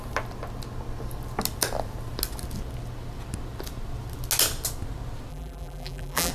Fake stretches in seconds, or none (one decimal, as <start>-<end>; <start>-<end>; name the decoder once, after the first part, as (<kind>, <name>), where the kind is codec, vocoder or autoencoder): 5.3-6.3 (vocoder, BigVGAN v2)